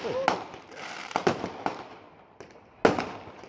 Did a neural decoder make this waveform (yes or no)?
no